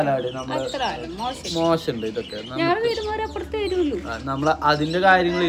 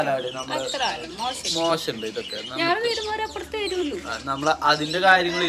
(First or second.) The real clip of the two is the first